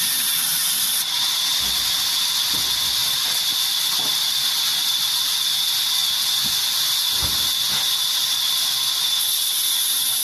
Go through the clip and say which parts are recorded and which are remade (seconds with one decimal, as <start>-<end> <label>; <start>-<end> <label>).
0.0-3.0 recorded; 3.0-3.9 remade; 3.9-10.2 recorded